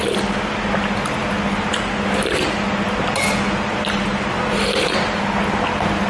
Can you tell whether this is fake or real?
real